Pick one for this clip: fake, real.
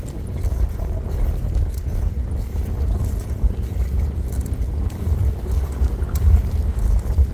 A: real